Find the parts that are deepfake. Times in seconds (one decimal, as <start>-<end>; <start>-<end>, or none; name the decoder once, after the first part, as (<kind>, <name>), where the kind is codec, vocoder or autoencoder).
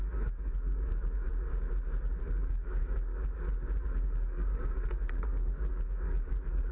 0.0-1.3 (codec, DAC); 2.2-3.1; 3.8-6.7